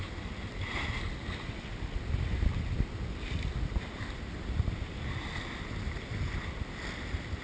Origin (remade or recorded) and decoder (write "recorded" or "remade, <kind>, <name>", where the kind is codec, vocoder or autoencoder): recorded